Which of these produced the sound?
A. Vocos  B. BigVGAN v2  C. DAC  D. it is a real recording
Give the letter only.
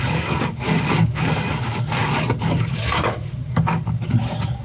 C